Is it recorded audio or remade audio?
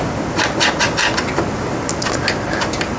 recorded